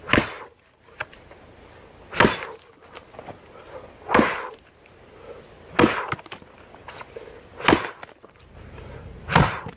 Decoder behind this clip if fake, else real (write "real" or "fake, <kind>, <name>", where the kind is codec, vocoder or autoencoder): real